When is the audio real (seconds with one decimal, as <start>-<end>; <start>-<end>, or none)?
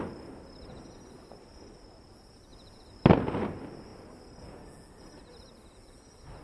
0.0-6.4